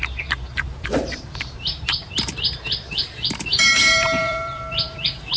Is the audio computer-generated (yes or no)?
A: yes